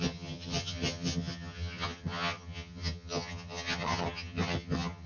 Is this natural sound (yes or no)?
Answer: no